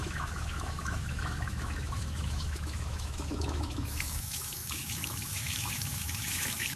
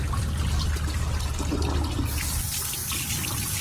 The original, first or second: second